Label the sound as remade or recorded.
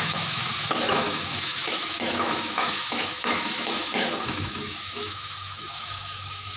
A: remade